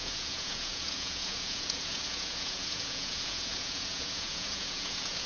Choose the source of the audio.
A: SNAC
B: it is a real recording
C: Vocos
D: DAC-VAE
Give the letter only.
C